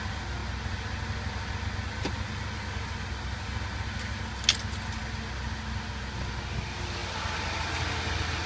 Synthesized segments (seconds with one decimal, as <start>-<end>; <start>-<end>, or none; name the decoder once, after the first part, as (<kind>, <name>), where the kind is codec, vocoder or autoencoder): none